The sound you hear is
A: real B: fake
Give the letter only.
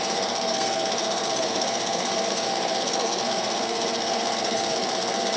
B